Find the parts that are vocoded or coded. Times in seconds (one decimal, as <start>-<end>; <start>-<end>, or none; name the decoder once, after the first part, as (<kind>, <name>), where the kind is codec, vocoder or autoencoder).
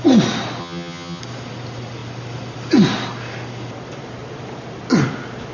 0.6-1.2 (vocoder, HiFi-GAN)